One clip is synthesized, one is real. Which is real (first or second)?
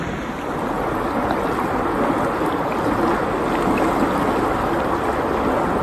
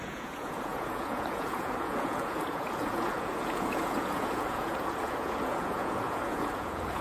first